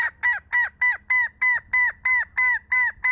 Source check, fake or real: real